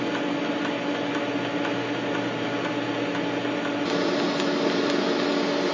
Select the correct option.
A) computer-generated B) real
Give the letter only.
B